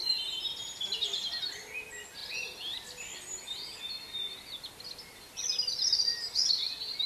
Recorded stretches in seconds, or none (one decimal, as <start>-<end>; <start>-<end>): 1.7-7.1